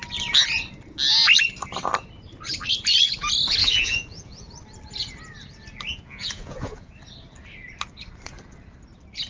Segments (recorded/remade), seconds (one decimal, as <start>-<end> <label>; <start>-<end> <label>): 0.0-3.6 recorded; 3.6-4.5 remade; 4.5-5.9 recorded; 5.9-6.9 remade; 6.9-9.3 recorded